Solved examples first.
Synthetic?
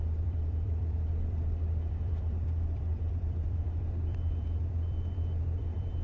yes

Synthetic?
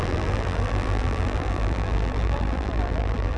yes